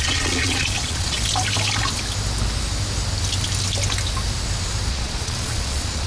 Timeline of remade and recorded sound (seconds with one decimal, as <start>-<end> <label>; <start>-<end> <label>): 0.0-1.2 remade; 1.2-4.9 recorded; 4.9-6.1 remade